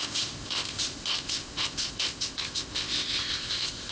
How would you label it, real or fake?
fake